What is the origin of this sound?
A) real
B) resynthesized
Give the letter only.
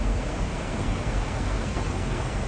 B